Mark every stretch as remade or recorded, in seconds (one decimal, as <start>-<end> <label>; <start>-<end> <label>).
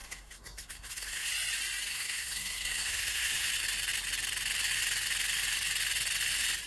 0.0-1.3 remade; 1.3-1.9 recorded; 1.9-3.5 remade; 3.5-6.7 recorded